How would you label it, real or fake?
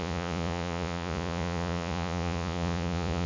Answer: fake